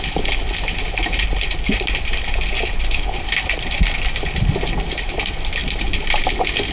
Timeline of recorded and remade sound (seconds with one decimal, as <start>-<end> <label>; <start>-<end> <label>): 0.0-6.7 recorded